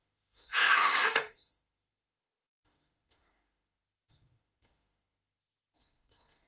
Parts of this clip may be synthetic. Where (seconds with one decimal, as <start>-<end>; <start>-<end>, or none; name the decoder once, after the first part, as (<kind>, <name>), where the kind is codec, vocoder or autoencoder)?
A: 0.0-6.5 (autoencoder, DAC-VAE)